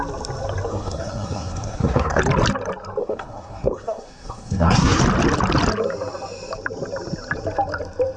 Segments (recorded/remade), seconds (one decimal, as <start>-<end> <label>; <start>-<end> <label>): 0.0-0.7 recorded; 0.7-2.2 remade; 2.2-3.0 recorded; 3.0-5.0 remade; 5.0-8.2 recorded